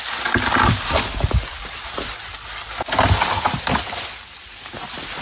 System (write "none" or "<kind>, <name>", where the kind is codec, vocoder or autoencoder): none